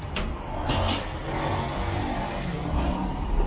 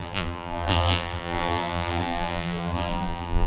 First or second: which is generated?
second